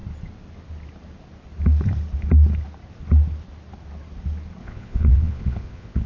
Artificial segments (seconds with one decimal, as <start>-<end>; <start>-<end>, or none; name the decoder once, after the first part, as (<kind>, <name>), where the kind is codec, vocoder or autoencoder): 4.6-6.1 (vocoder, Vocos)